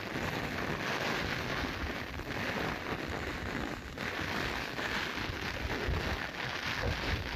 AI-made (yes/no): no